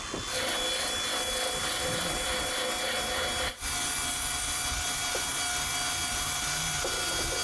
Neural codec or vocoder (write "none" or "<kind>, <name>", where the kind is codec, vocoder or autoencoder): none